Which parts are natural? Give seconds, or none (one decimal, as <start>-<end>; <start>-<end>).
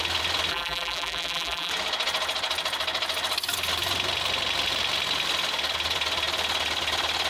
0.0-0.5; 1.7-7.3